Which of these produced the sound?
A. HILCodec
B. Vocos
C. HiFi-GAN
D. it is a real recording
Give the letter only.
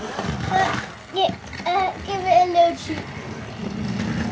D